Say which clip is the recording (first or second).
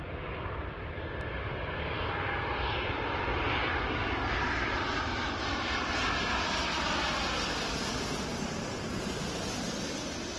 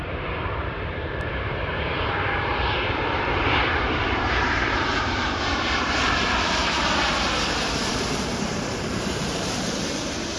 first